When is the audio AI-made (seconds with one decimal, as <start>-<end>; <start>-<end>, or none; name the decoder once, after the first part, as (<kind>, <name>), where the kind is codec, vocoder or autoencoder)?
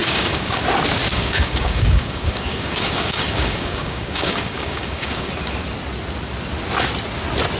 0.0-0.6 (codec, DAC); 1.1-5.3